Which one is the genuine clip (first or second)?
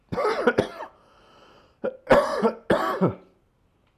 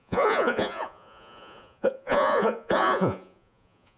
first